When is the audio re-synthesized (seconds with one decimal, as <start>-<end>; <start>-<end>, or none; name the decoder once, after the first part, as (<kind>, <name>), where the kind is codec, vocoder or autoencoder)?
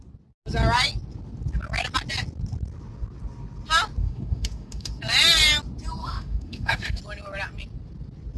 4.0-5.0 (autoencoder, DAC-VAE); 6.0-7.0